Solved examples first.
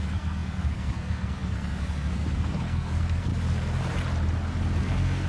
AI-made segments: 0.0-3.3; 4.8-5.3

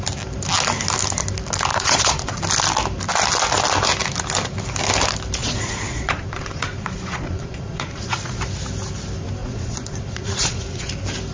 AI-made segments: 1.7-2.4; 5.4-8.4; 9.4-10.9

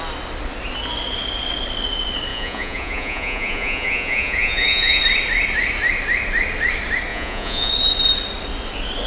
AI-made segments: 2.3-5.0; 7.1-7.7

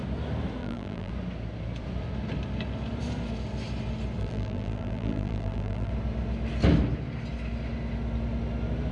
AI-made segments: 0.6-1.1; 4.2-5.9

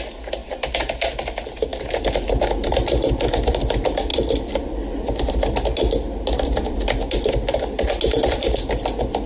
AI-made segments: none

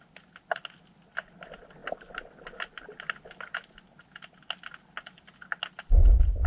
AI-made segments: none

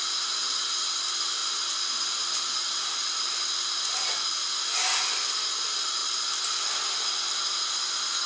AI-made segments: none